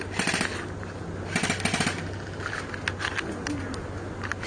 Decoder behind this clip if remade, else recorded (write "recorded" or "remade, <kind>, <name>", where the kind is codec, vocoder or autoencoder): recorded